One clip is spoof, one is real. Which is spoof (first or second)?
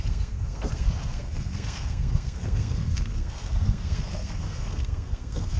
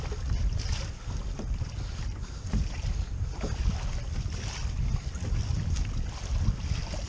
first